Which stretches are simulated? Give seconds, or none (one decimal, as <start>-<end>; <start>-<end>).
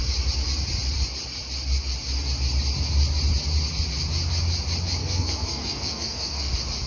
5.0-6.5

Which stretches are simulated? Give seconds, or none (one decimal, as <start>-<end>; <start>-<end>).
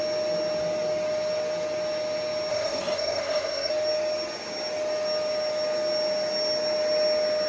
2.5-3.7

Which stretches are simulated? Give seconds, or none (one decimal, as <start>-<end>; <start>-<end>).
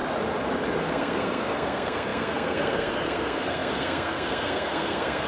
0.9-5.3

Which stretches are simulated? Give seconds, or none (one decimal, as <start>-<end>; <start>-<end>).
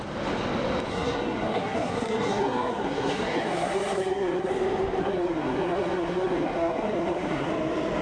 0.9-4.5; 5.0-7.5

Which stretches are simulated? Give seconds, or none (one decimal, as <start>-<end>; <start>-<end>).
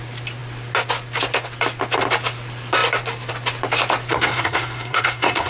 4.1-5.5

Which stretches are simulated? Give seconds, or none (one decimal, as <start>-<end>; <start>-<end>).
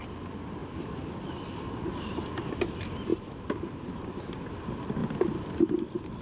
none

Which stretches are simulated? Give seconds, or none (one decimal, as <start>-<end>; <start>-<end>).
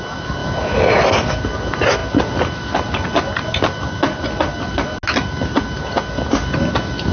none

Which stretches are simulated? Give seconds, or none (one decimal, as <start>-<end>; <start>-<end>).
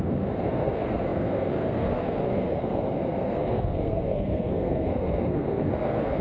0.0-6.2